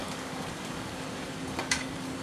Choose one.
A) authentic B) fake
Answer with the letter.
B